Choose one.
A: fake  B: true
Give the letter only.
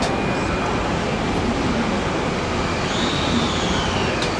B